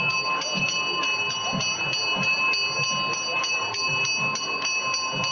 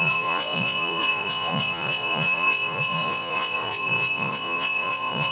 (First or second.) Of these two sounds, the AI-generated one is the second